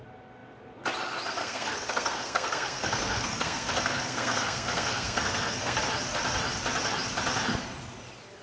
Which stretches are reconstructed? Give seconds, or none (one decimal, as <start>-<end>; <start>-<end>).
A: 1.4-5.8